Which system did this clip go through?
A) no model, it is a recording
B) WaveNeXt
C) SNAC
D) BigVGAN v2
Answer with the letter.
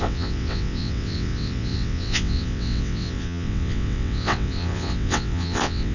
B